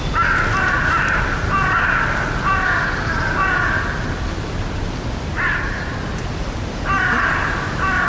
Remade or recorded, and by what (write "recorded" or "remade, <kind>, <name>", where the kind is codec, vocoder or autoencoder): recorded